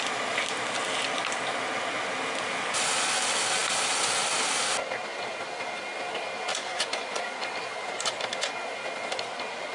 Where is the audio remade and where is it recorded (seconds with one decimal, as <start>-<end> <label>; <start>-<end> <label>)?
0.0-6.5 recorded; 6.5-7.2 remade; 7.2-9.7 recorded